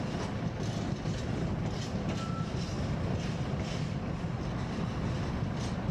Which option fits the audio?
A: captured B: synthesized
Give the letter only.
A